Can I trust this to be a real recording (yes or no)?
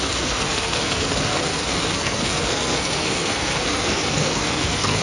no